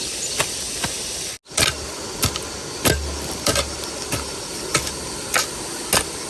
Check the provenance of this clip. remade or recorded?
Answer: recorded